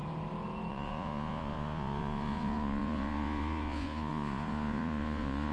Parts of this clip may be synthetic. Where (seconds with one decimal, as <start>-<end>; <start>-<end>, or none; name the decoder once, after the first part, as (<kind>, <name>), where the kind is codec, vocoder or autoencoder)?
0.7-5.5 (vocoder, Vocos)